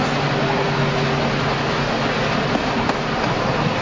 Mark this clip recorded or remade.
recorded